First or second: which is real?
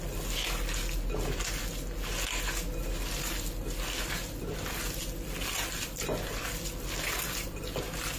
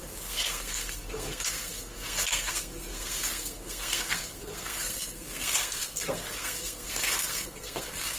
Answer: first